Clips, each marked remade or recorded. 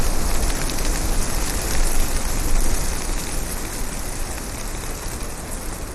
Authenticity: recorded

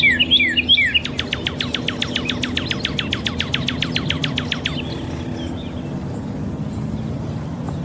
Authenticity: recorded